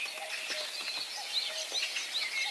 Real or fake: real